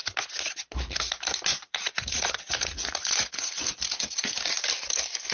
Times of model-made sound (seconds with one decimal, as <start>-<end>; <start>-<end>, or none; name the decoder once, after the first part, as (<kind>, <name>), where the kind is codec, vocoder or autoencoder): 1.5-3.5 (vocoder, Vocos)